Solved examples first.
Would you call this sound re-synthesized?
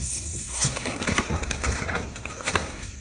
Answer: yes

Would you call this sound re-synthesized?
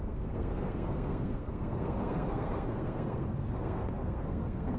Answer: yes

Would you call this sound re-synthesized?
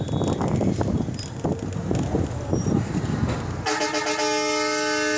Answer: no